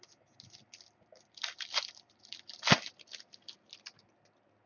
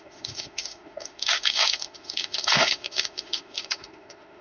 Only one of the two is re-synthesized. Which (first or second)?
second